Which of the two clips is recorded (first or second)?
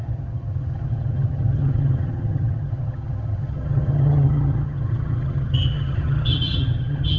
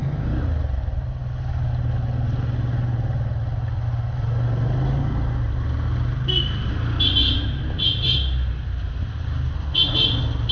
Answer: second